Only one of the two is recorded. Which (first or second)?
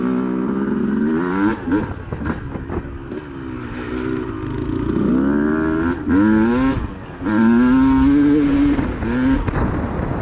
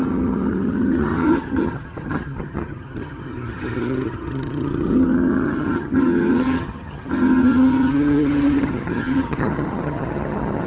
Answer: first